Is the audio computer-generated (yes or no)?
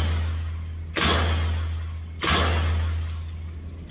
no